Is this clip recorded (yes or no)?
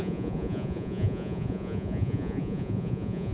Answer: no